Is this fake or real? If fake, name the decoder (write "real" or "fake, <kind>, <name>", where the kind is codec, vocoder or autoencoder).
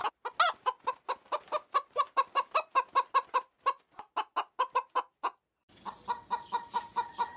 real